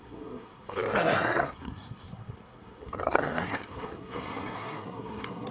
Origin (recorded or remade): remade